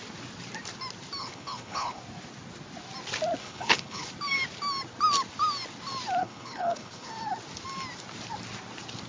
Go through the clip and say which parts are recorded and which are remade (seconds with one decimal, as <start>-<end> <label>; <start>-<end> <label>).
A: 0.0-1.2 recorded; 1.2-2.0 remade; 2.0-3.4 recorded; 3.4-4.1 remade; 4.1-6.2 recorded; 6.2-7.1 remade; 7.1-9.1 recorded